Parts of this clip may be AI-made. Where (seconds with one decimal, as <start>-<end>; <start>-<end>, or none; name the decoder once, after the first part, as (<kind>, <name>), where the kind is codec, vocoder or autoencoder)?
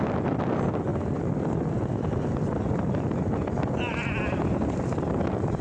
none